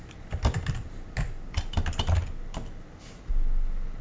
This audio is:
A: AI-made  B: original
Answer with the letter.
B